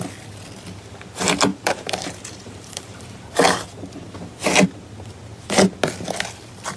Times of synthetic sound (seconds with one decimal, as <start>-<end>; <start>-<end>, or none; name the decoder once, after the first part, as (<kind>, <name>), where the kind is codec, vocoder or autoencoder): 1.5-3.2 (vocoder, BigVGAN v2)